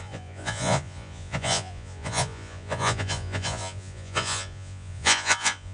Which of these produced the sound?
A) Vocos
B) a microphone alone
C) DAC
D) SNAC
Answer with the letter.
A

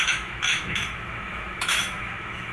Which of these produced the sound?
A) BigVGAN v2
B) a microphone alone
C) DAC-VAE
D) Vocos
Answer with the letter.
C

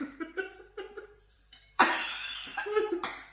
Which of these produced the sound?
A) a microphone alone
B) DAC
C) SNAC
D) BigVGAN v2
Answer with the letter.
D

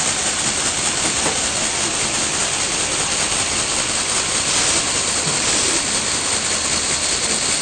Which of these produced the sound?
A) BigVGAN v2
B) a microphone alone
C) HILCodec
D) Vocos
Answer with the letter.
B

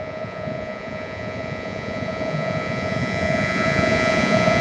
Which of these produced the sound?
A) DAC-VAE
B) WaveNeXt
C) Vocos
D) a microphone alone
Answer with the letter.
C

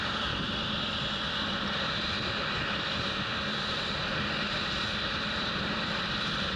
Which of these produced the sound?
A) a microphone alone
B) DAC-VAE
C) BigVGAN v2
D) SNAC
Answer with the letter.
C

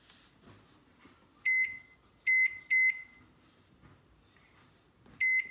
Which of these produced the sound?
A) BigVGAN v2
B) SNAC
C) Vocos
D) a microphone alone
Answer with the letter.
D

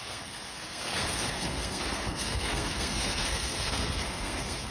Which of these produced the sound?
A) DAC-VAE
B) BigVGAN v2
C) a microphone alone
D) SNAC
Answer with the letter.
D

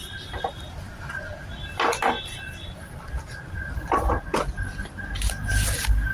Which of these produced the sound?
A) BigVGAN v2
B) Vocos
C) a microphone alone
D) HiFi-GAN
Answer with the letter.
C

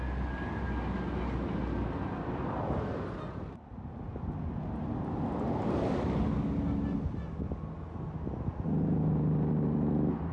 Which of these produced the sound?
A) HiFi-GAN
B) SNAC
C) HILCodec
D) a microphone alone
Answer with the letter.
D